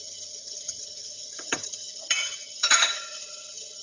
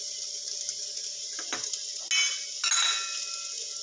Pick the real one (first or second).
second